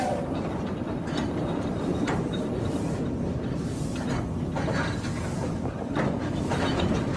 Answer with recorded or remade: remade